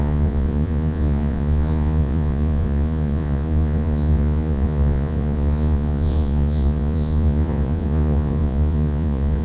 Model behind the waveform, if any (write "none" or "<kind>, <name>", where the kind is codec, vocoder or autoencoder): vocoder, Vocos